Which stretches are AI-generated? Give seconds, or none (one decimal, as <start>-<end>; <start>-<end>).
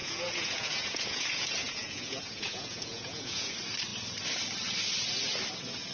0.0-3.5